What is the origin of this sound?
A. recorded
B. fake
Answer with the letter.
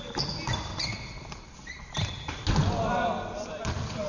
A